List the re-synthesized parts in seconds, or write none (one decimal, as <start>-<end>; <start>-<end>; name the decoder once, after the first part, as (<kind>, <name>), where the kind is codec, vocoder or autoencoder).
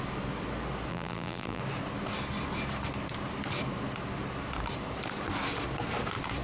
0.9-1.6 (vocoder, BigVGAN v2)